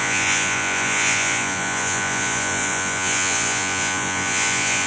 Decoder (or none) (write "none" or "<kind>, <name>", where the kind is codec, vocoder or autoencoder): vocoder, Vocos